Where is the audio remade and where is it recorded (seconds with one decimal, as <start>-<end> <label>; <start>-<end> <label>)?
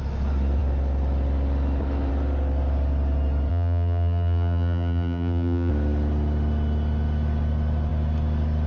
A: 0.0-3.5 recorded; 3.5-5.7 remade; 5.7-8.7 recorded